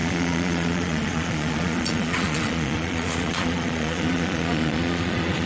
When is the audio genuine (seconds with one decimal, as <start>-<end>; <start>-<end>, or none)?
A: none